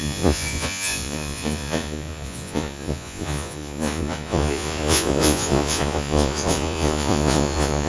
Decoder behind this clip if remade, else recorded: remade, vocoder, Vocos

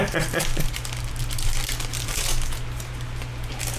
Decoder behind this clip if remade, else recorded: recorded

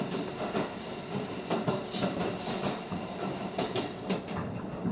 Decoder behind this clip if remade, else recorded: recorded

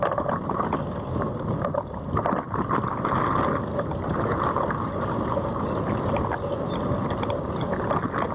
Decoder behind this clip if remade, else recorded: recorded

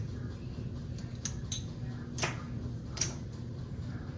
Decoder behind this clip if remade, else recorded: recorded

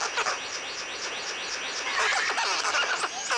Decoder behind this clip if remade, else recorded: recorded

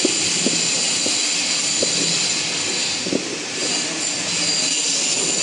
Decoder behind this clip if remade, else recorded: recorded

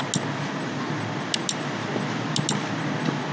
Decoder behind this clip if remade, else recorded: recorded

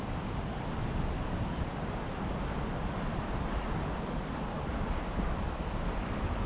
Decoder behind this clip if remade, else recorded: recorded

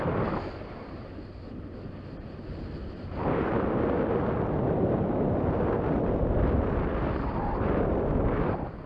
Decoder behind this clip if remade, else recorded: recorded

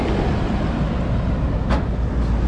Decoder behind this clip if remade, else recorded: recorded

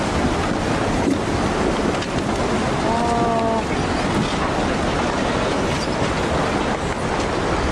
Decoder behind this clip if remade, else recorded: recorded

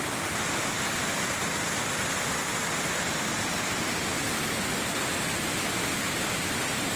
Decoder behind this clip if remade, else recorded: recorded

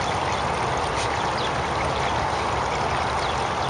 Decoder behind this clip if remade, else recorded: recorded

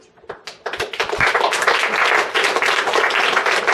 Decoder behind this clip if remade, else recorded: recorded